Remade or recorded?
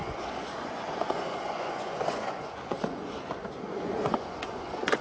remade